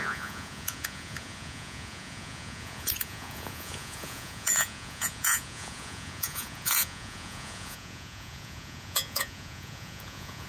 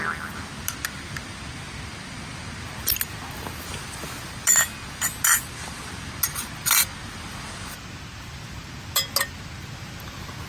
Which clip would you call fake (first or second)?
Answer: first